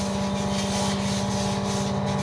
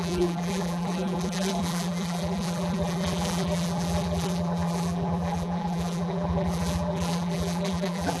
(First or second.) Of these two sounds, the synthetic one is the second